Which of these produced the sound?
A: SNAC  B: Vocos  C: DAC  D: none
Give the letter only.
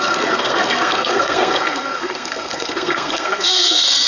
A